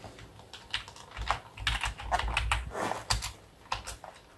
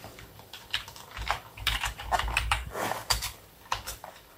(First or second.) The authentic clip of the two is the first